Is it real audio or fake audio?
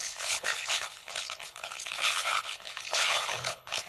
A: fake